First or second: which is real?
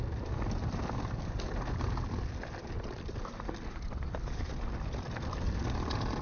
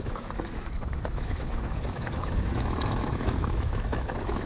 first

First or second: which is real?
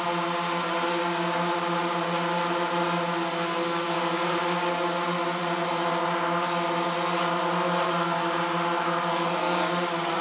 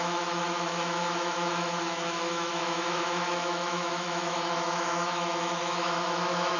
first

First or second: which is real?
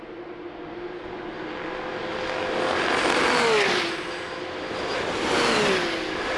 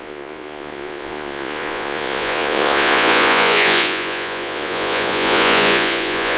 first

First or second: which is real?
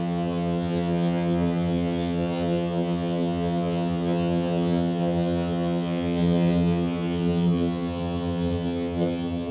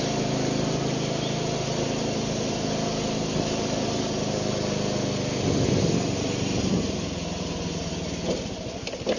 second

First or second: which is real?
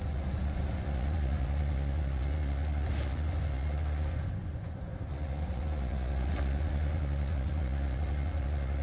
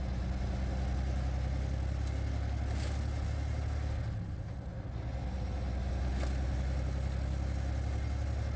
second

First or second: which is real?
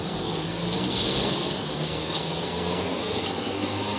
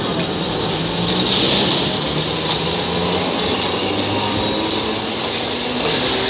second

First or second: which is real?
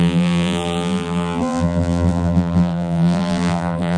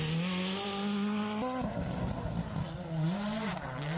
second